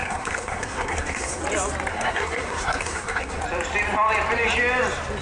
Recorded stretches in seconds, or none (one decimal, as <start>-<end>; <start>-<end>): 1.4-1.9; 3.4-5.2